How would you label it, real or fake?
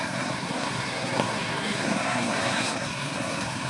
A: fake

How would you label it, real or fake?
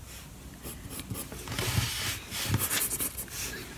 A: real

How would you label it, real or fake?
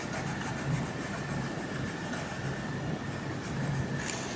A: real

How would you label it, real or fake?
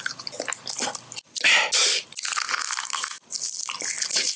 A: real